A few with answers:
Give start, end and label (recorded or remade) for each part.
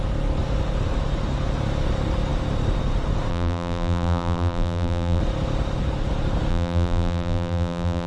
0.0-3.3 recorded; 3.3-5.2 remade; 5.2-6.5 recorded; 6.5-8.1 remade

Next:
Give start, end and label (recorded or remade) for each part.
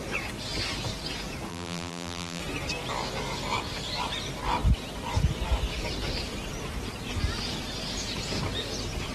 0.0-1.5 recorded; 1.5-2.4 remade; 2.4-9.1 recorded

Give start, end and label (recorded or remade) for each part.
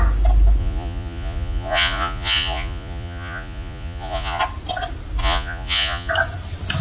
0.0-0.6 recorded; 0.6-4.4 remade; 4.4-5.2 recorded; 5.2-6.1 remade; 6.1-6.8 recorded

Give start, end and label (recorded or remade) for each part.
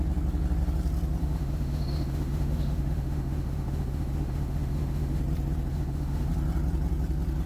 0.0-1.2 recorded; 1.2-5.2 remade; 5.2-5.7 recorded; 5.7-6.3 remade; 6.3-7.5 recorded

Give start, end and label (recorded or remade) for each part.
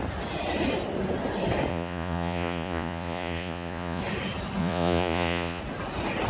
0.0-1.7 recorded; 1.7-4.0 remade; 4.0-4.6 recorded; 4.6-5.6 remade; 5.6-6.3 recorded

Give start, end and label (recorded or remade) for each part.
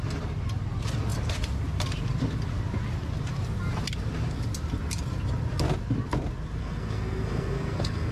0.0-6.6 recorded; 6.6-8.1 remade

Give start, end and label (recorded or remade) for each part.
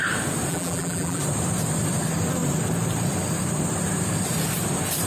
0.0-0.5 recorded; 0.5-1.2 remade; 1.2-5.1 recorded